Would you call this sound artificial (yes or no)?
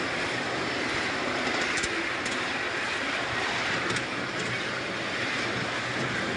no